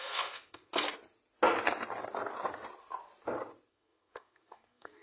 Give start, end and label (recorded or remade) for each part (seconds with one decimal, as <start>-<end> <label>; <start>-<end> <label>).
0.0-0.7 remade; 0.7-3.7 recorded; 3.7-5.0 remade